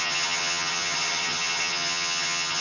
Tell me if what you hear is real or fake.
fake